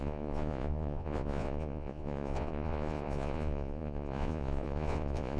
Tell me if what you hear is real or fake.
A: fake